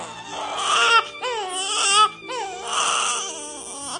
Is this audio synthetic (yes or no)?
no